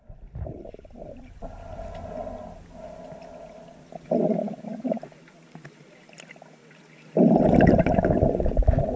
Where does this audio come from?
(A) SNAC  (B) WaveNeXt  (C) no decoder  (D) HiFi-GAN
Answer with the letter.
C